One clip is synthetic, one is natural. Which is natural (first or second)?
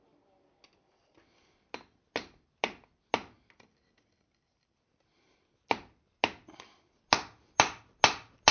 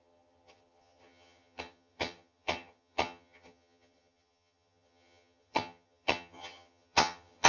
first